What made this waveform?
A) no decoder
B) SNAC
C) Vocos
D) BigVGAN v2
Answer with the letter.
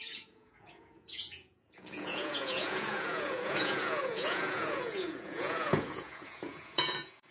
C